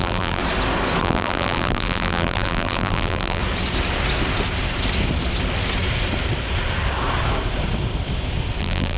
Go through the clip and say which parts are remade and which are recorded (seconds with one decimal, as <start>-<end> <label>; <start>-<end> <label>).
0.0-0.4 remade; 0.4-1.0 recorded; 1.0-3.4 remade; 3.4-8.6 recorded; 8.6-9.0 remade

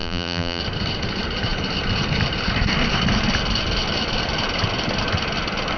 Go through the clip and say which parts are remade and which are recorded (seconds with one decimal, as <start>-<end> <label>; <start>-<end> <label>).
0.0-0.6 remade; 0.6-5.8 recorded

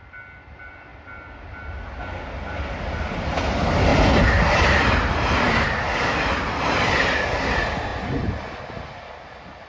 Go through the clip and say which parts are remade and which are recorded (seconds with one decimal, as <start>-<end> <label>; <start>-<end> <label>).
0.0-9.7 recorded

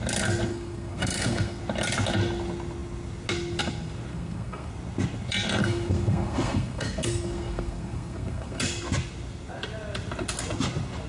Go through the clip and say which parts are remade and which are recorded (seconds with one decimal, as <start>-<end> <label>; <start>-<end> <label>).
0.0-0.5 recorded; 0.5-1.6 remade; 1.6-4.1 recorded; 4.1-4.7 remade; 4.7-5.6 recorded; 5.6-8.6 remade; 8.6-11.1 recorded

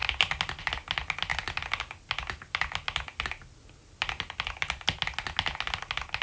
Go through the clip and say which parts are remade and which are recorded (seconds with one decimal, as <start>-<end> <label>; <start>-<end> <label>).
0.0-6.2 recorded

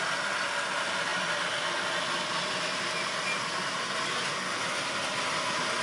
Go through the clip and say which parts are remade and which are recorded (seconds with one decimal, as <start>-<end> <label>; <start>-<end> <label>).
0.0-5.8 recorded

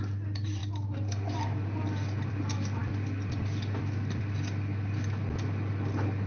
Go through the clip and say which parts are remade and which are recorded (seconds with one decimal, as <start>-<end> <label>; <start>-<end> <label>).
0.0-6.3 recorded